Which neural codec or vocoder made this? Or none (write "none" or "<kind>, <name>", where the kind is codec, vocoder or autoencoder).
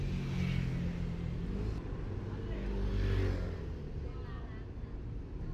none